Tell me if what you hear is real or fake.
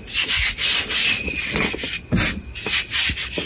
real